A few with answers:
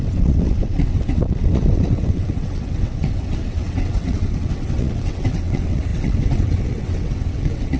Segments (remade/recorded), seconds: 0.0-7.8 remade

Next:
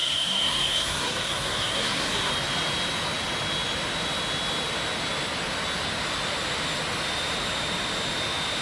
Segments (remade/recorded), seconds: 0.0-2.3 remade; 2.3-8.6 recorded